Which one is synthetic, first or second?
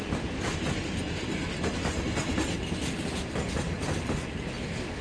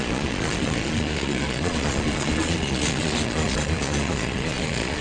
second